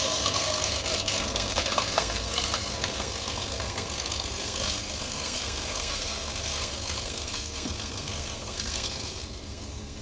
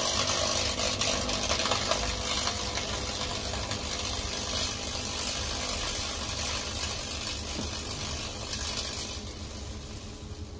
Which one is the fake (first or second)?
first